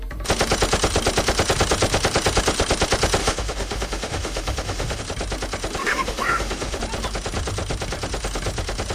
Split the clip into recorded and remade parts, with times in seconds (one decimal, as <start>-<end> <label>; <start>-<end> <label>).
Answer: 0.0-3.2 recorded; 3.2-5.0 remade; 5.0-5.8 recorded; 5.8-6.8 remade; 6.8-8.9 recorded